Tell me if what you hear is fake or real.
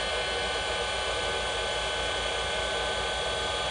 real